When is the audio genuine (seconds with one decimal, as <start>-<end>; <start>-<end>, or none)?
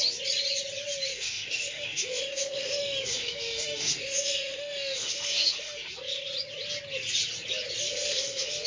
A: 0.0-1.1; 5.9-7.9